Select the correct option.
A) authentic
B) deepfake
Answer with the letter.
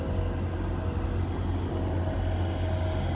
A